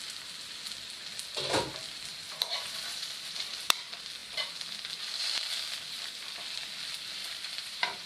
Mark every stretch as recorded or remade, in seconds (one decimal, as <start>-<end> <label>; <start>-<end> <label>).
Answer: 0.0-2.1 recorded; 2.1-3.8 remade; 3.8-7.2 recorded; 7.2-8.1 remade